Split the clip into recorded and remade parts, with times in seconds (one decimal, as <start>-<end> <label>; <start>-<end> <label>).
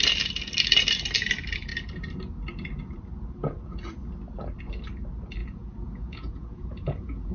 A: 0.0-5.4 recorded; 5.4-7.3 remade